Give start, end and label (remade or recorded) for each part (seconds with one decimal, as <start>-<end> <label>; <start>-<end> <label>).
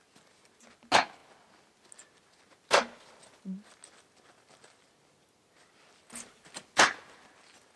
0.0-7.8 recorded